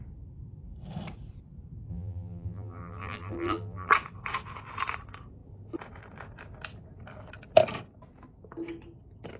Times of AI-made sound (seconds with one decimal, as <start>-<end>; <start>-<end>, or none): 1.9-3.9